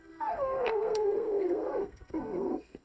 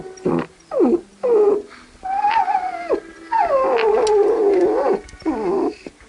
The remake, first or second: first